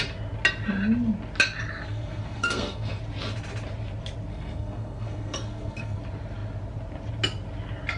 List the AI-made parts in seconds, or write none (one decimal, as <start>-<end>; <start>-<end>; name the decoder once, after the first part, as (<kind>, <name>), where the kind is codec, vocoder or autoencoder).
1.7-3.0 (codec, SNAC); 4.3-6.0